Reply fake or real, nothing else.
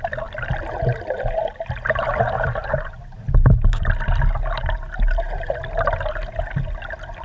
real